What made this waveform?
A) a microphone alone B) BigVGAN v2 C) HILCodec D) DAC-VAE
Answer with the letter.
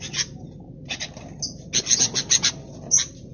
A